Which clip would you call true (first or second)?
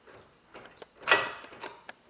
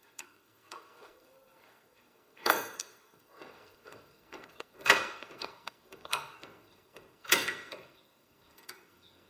first